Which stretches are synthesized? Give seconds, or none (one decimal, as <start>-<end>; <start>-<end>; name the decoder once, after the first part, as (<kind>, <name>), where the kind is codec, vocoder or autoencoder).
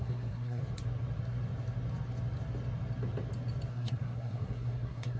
0.0-0.6 (codec, SNAC); 3.7-5.2